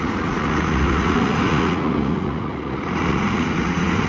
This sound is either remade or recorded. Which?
remade